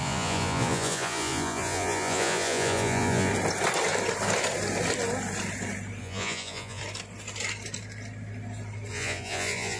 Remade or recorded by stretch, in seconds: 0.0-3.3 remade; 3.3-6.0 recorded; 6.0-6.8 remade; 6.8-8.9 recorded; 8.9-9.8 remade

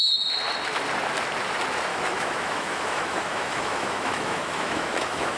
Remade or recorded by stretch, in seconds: 0.0-1.9 recorded; 1.9-5.4 remade